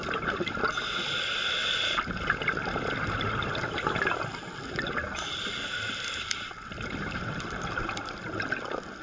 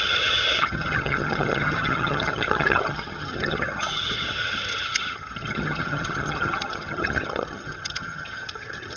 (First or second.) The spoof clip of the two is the second